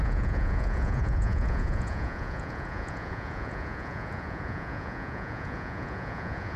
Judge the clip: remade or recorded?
remade